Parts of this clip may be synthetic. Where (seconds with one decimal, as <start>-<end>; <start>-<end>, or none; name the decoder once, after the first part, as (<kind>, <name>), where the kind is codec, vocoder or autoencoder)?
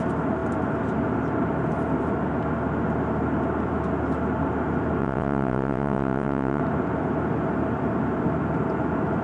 5.0-6.6 (vocoder, WaveNeXt)